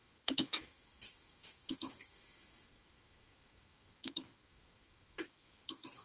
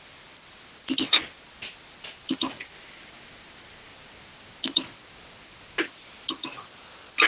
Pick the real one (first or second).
second